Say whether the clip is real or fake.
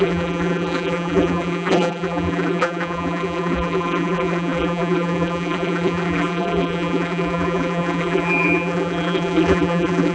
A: fake